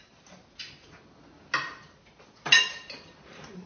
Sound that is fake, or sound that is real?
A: real